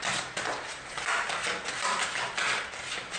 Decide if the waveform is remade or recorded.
recorded